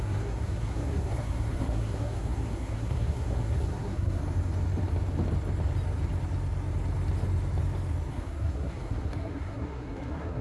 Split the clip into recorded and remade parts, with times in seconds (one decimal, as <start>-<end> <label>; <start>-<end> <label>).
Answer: 0.0-4.2 remade; 4.2-8.1 recorded; 8.1-10.4 remade